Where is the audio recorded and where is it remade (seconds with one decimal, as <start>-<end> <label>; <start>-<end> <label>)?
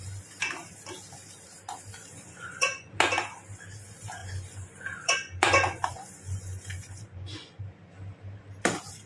0.0-2.1 recorded; 2.1-3.0 remade; 3.0-4.2 recorded; 4.2-7.6 remade; 7.6-9.1 recorded